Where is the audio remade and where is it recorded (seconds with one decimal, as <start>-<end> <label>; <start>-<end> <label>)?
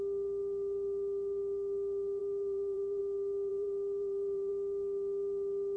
0.0-2.2 recorded; 2.2-3.0 remade; 3.0-3.5 recorded; 3.5-4.5 remade; 4.5-5.8 recorded